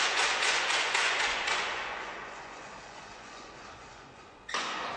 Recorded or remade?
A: remade